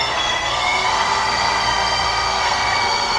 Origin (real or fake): fake